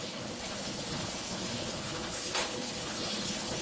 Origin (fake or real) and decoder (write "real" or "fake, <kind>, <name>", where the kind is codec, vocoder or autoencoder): fake, codec, HILCodec